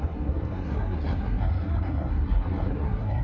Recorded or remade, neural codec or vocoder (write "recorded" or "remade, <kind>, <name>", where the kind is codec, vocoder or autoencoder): remade, codec, SNAC